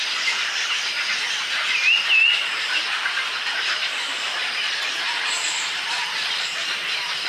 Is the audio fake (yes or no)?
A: no